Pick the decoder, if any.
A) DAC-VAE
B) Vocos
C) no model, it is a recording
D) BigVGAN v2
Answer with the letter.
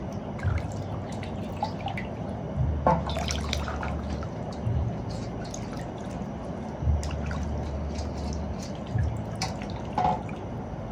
C